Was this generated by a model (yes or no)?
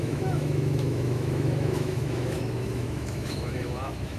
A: yes